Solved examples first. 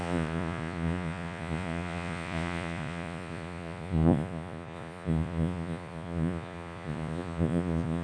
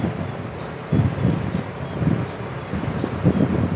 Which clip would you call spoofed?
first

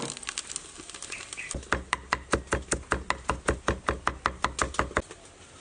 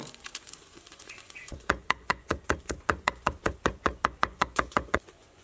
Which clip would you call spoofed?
second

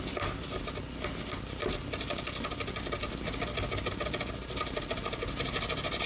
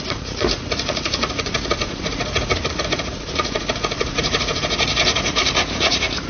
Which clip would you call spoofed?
second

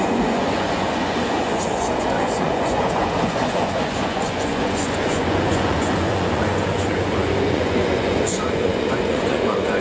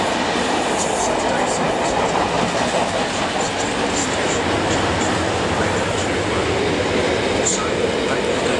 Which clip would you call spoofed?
first